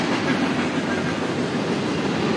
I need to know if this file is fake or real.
real